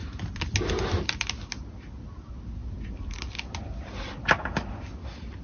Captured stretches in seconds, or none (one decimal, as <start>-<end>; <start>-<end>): 0.0-5.4